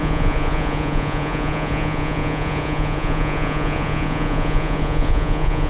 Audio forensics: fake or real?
fake